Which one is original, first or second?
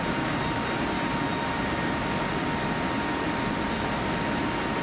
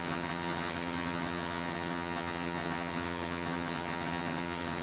first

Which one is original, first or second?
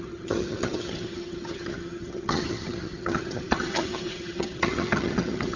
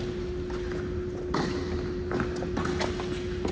second